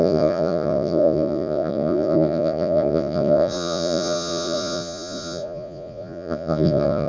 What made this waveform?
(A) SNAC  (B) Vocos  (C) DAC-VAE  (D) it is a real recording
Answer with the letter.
B